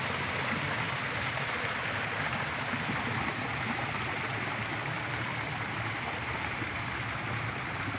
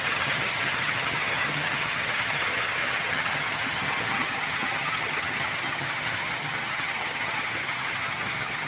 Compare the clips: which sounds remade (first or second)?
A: second